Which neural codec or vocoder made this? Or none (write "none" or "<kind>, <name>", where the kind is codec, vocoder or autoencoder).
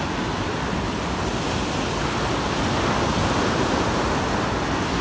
none